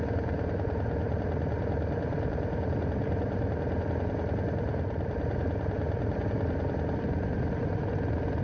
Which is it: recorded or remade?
recorded